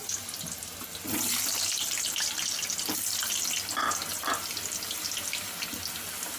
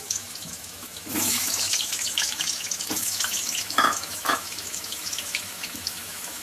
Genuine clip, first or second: first